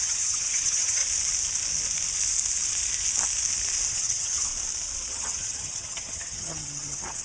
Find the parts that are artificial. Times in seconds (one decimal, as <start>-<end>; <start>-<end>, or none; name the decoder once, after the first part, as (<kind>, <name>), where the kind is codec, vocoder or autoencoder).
0.0-1.0 (vocoder, HiFi-GAN); 3.9-4.5; 5.1-7.2